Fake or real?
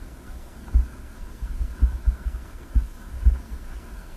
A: fake